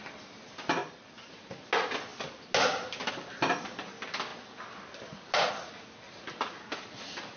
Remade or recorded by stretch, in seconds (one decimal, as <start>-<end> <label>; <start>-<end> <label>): 0.0-7.4 recorded